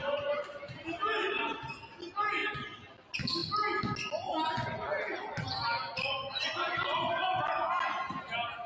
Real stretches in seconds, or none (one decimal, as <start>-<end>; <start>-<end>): 1.6-8.7